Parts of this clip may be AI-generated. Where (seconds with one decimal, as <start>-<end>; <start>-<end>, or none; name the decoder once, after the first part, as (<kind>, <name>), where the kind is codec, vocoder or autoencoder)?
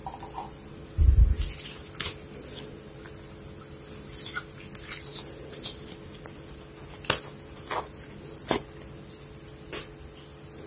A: none